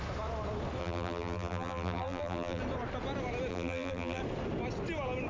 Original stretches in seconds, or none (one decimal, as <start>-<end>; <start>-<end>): 0.0-0.8; 2.6-3.5; 4.2-5.3